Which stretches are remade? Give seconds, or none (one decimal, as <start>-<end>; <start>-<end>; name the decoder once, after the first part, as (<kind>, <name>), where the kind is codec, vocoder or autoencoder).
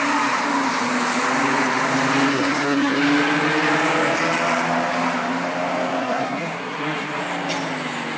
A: 2.3-3.0 (codec, SNAC); 6.0-7.2